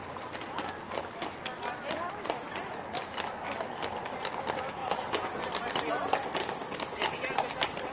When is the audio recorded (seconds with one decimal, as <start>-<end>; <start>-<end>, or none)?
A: 0.0-6.4; 7.2-7.9